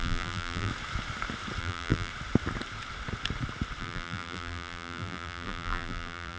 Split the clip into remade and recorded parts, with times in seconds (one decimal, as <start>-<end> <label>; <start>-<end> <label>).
0.0-0.7 remade; 0.7-1.6 recorded; 1.6-2.1 remade; 2.1-3.8 recorded; 3.8-6.4 remade